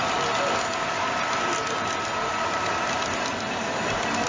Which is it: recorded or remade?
recorded